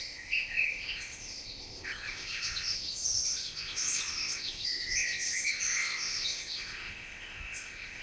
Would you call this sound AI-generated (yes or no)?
yes